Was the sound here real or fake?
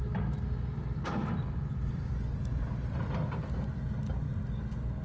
real